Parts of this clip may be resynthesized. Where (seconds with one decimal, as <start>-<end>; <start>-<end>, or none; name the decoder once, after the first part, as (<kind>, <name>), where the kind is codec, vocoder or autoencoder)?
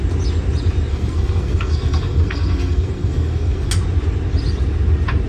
0.9-3.7 (codec, SNAC)